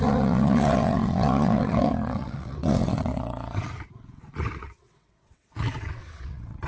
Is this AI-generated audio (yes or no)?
yes